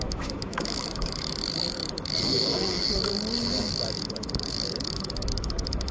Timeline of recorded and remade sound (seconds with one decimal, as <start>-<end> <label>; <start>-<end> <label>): 0.0-5.9 remade